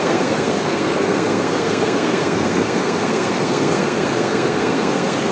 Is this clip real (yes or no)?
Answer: no